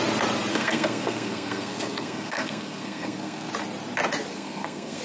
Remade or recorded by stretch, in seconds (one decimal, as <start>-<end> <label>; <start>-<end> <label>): 0.0-0.5 recorded; 0.5-3.5 remade; 3.5-4.3 recorded; 4.3-5.0 remade